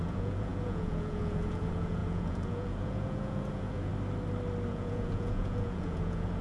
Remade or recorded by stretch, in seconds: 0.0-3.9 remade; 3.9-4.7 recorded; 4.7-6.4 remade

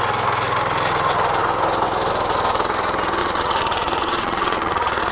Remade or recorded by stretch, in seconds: 0.0-3.2 recorded; 3.2-5.1 remade

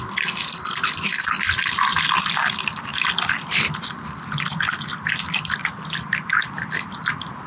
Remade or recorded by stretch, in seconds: 0.0-7.5 recorded

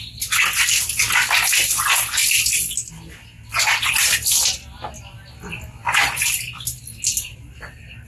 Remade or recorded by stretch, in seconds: 0.0-8.1 recorded

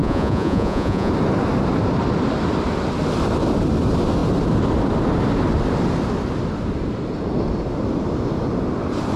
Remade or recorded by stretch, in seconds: 0.0-1.1 remade; 1.1-9.2 recorded

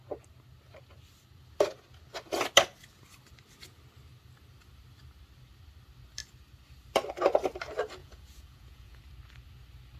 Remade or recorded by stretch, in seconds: 0.0-8.0 recorded; 8.0-9.0 remade; 9.0-10.0 recorded